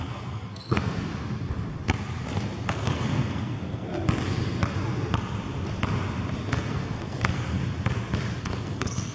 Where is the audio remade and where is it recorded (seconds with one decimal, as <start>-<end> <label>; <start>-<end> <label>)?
0.0-1.1 remade; 1.1-2.7 recorded; 2.7-3.9 remade; 3.9-6.6 recorded; 6.6-7.6 remade; 7.6-8.4 recorded; 8.4-9.1 remade